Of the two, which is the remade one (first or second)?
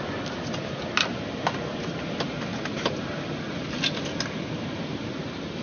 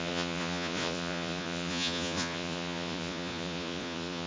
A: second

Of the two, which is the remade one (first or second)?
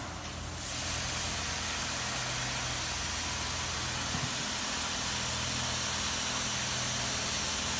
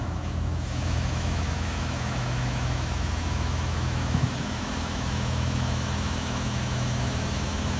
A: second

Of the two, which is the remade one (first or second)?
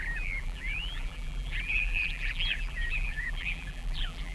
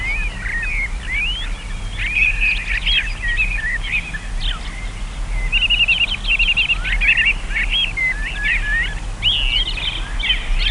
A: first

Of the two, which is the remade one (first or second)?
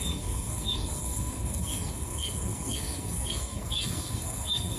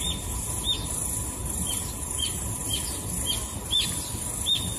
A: first